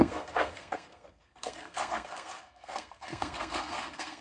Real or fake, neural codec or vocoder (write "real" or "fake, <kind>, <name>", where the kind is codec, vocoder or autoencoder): fake, codec, SNAC